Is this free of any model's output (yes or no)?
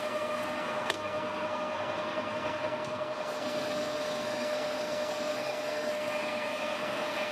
no